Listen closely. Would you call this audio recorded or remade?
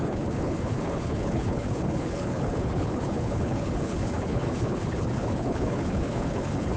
remade